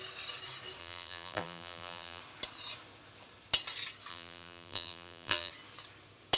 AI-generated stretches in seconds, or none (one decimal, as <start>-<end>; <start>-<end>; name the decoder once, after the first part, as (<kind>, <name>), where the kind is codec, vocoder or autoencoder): 0.8-2.2 (vocoder, BigVGAN v2); 4.1-5.5